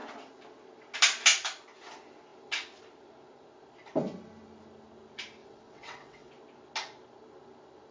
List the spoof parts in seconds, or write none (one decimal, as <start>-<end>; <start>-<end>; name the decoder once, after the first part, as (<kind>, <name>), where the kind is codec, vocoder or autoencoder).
5.4-6.3 (vocoder, WaveNeXt)

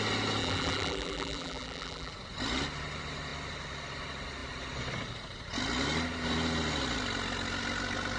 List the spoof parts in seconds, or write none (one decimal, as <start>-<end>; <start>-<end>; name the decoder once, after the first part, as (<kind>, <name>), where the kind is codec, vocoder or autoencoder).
0.4-2.1 (vocoder, BigVGAN v2)

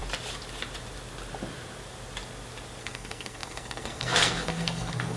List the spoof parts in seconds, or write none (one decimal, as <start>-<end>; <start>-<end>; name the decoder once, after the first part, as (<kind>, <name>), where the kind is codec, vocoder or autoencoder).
2.8-5.2 (codec, SNAC)

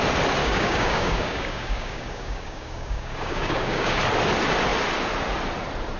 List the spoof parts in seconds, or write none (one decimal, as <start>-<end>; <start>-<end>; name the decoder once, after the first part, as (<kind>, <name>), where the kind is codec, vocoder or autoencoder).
0.4-4.0 (codec, DAC)